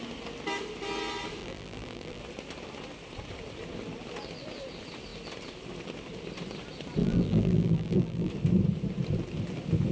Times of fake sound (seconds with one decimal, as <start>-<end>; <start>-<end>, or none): 1.4-2.2; 7.0-8.3